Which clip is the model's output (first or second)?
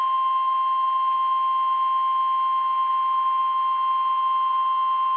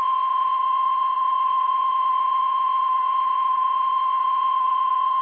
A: second